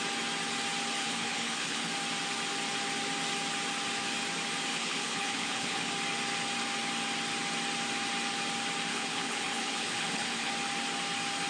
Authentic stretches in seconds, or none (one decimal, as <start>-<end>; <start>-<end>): 0.0-1.0; 1.9-4.7; 5.9-8.9; 10.5-11.5